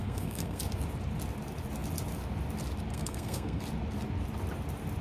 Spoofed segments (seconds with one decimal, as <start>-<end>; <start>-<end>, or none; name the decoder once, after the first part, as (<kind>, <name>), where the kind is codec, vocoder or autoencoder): 0.0-0.6 (codec, SNAC); 2.9-3.6